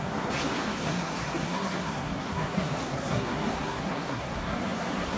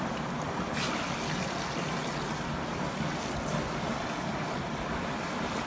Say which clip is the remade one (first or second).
first